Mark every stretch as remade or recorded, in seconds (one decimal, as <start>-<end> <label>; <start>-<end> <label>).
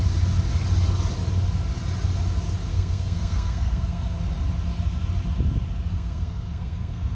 0.0-2.7 recorded; 2.7-4.2 remade; 4.2-5.9 recorded; 5.9-7.2 remade